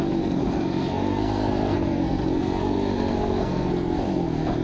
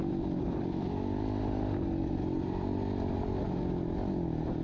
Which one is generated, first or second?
first